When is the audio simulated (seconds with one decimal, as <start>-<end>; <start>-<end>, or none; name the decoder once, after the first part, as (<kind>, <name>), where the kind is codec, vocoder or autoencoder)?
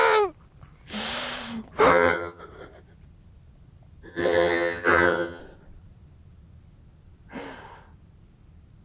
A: 1.9-2.4 (vocoder, HiFi-GAN); 4.1-5.4